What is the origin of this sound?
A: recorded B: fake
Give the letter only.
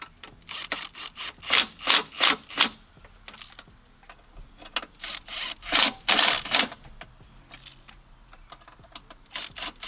A